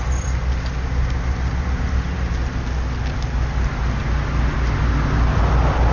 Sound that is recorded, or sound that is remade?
recorded